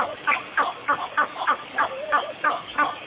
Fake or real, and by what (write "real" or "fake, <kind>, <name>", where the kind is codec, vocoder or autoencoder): fake, codec, DAC